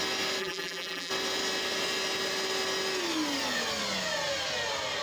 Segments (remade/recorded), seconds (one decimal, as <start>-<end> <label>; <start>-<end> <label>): 0.0-0.4 recorded; 0.4-1.1 remade; 1.1-5.0 recorded